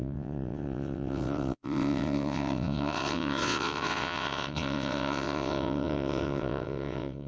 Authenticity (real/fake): fake